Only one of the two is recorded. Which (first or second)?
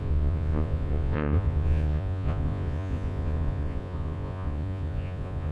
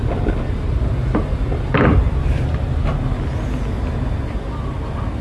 second